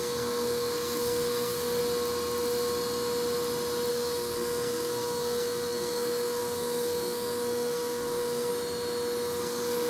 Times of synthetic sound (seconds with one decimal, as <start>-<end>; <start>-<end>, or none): 0.0-1.8; 3.9-8.5; 9.4-9.9